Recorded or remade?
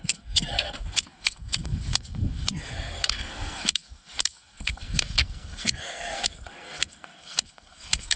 remade